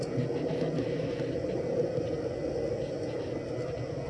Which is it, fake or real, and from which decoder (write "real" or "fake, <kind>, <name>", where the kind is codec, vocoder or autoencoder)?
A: real